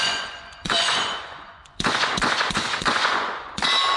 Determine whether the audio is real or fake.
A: fake